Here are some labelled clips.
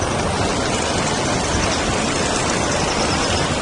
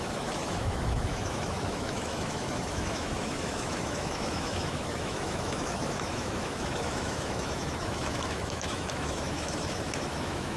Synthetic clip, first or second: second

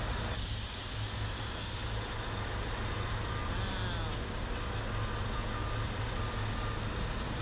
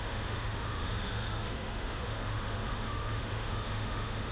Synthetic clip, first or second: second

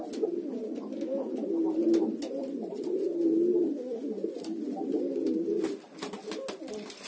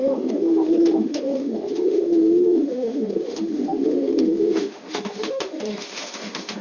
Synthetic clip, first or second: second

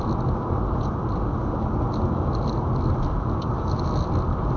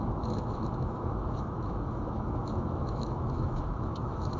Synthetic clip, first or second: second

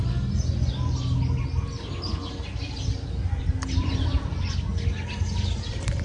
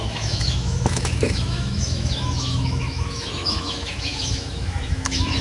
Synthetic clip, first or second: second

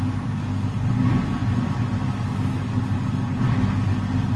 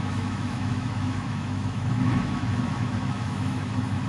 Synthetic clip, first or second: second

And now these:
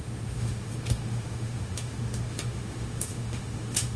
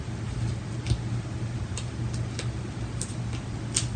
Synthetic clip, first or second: first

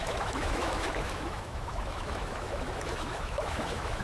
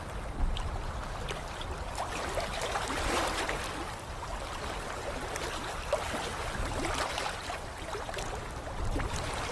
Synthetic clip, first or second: first